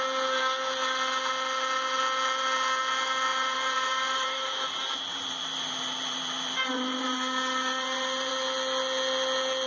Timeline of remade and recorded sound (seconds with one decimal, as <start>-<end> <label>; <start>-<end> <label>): 0.0-3.3 recorded; 3.3-8.3 remade; 8.3-9.7 recorded